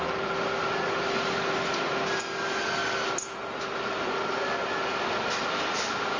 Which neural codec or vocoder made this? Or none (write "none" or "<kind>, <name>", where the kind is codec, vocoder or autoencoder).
none